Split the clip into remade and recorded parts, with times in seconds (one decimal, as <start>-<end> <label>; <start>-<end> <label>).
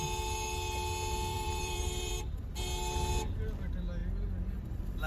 0.0-1.3 recorded; 1.3-2.5 remade; 2.5-4.0 recorded; 4.0-5.1 remade